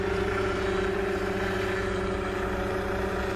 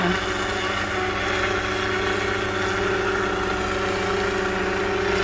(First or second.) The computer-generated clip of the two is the first